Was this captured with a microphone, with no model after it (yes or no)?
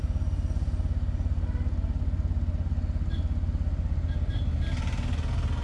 yes